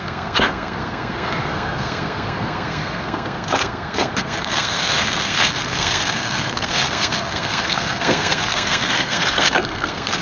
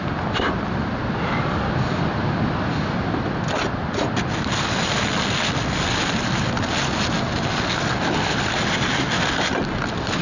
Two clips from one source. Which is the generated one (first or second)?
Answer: first